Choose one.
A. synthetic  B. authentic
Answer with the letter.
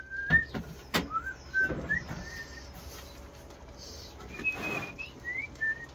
B